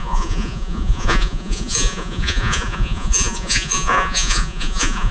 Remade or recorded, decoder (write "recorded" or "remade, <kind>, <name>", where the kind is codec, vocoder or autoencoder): remade, vocoder, Vocos